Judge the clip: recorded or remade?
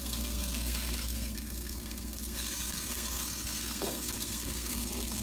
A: remade